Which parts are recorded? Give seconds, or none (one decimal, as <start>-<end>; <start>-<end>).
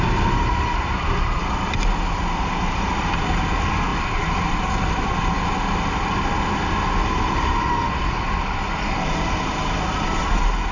0.0-3.9; 4.5-10.7